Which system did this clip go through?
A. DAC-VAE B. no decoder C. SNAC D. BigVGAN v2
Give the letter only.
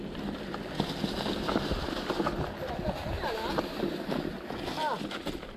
B